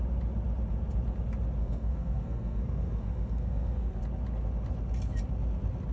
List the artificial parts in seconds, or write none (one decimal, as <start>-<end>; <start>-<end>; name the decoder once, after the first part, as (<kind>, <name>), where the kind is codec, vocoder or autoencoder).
1.6-4.0 (codec, SNAC)